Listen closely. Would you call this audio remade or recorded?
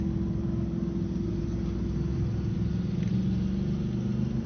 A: recorded